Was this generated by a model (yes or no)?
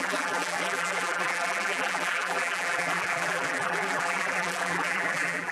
yes